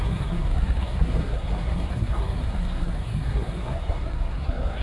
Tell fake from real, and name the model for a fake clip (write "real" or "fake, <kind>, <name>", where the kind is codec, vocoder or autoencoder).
fake, codec, SNAC